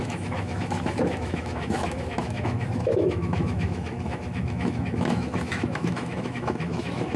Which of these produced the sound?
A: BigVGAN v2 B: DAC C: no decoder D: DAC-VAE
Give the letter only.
D